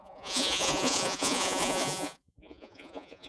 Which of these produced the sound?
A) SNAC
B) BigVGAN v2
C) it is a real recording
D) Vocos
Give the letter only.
D